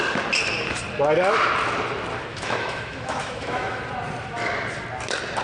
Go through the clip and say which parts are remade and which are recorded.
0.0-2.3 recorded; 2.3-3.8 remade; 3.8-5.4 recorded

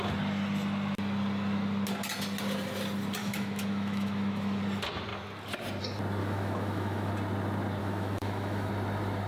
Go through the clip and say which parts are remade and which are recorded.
0.0-3.2 recorded; 3.2-4.6 remade; 4.6-6.2 recorded; 6.2-7.1 remade; 7.1-7.8 recorded; 7.8-8.7 remade; 8.7-9.3 recorded